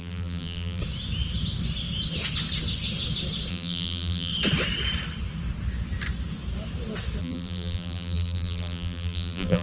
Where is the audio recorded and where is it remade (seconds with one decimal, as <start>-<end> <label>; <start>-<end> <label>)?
0.0-0.8 remade; 0.8-3.5 recorded; 3.5-4.3 remade; 4.3-7.2 recorded; 7.2-9.6 remade